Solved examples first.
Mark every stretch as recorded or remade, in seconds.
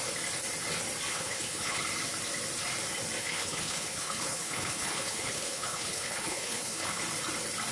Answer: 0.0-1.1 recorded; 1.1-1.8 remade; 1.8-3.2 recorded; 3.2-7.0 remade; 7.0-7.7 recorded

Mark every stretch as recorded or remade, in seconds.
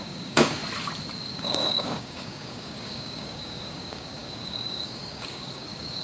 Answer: 0.0-0.6 remade; 0.6-1.3 recorded; 1.3-6.0 remade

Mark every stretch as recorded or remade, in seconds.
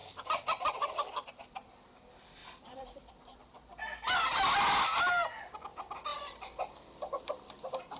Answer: 0.0-1.3 remade; 1.3-2.4 recorded; 2.4-3.1 remade; 3.1-6.1 recorded; 6.1-7.3 remade; 7.3-8.0 recorded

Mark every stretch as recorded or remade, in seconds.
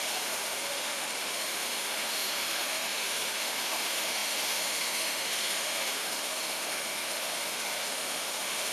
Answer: 0.0-8.7 remade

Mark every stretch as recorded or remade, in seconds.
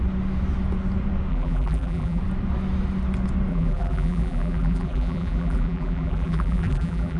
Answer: 0.0-1.3 recorded; 1.3-2.2 remade; 2.2-3.5 recorded; 3.5-7.2 remade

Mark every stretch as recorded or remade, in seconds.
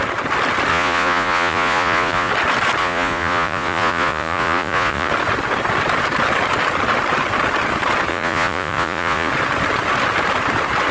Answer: 0.0-0.7 recorded; 0.7-2.3 remade; 2.3-2.8 recorded; 2.8-5.1 remade; 5.1-8.1 recorded; 8.1-9.3 remade; 9.3-10.9 recorded